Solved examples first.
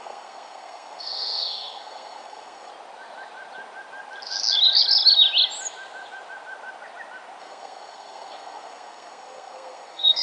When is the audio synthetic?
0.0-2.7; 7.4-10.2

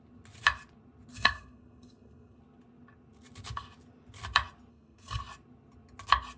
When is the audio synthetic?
1.1-2.4; 4.7-5.2

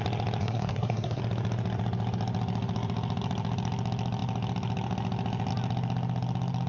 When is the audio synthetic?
0.4-1.2

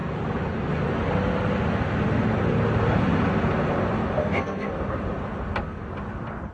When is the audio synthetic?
4.2-4.7